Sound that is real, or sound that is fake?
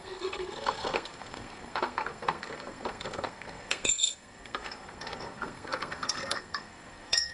fake